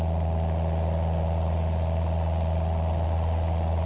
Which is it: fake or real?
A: real